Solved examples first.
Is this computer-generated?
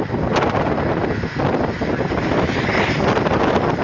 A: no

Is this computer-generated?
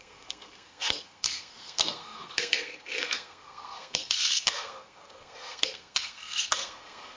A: yes